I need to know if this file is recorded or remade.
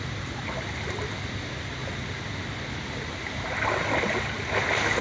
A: recorded